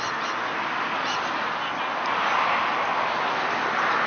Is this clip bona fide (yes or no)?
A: yes